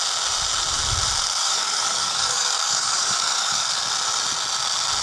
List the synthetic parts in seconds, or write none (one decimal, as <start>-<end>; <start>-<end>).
1.4-3.7